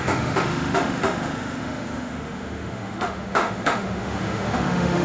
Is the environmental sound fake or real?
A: fake